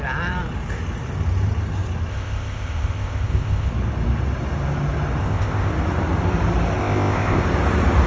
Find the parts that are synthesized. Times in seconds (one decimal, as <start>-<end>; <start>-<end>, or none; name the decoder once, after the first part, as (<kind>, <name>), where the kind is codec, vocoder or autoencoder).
2.1-3.7 (codec, ZipCodec); 5.2-5.7; 6.8-7.4